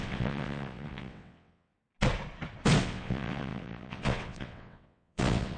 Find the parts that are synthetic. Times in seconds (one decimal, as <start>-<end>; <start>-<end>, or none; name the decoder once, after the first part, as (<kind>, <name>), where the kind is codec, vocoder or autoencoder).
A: 0.0-1.7 (vocoder, WaveNeXt); 2.8-5.6